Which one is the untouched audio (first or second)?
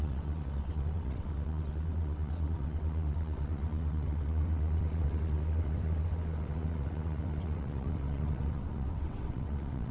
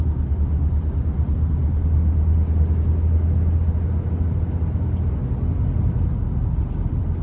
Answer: second